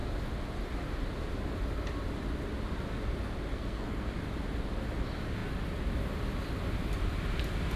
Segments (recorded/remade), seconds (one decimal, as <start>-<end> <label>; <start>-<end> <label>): 0.0-3.5 recorded; 3.5-4.1 remade; 4.1-7.8 recorded